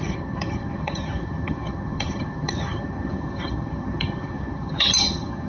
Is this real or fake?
fake